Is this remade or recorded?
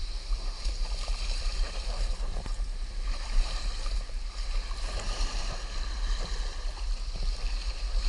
remade